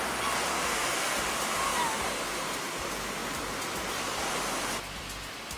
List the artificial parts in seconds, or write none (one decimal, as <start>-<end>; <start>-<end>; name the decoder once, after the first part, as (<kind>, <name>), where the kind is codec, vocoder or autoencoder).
0.5-1.2 (codec, SNAC)